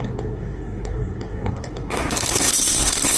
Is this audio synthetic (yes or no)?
yes